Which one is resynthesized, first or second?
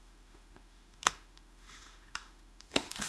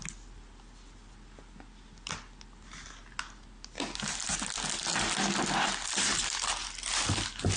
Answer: first